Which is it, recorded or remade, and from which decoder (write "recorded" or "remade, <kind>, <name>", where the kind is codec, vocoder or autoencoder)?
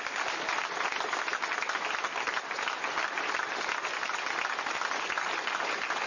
recorded